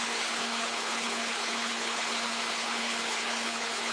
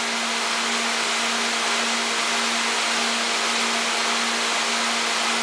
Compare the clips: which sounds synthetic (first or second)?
first